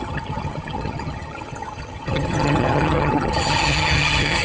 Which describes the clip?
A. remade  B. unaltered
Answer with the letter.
A